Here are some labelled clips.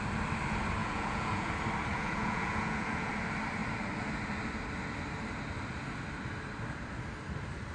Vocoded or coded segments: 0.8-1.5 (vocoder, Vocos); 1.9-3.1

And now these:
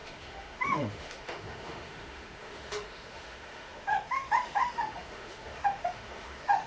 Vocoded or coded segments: 0.0-6.7 (autoencoder, DAC-VAE)

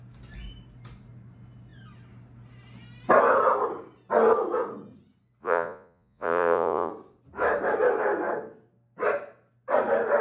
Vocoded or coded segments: 5.4-6.9 (vocoder, Vocos)

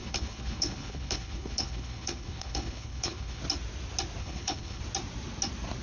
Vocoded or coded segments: 0.0-3.4 (codec, HILCodec); 4.2-4.8

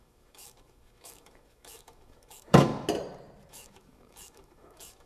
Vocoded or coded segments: 0.0-2.7 (autoencoder, DAC-VAE); 3.5-5.1

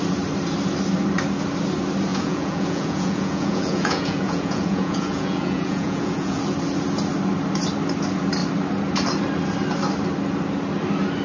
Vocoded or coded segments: 2.1-6.4 (vocoder, Vocos)

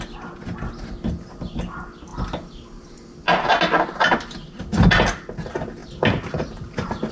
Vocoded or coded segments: none

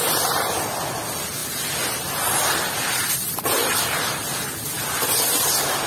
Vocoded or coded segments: none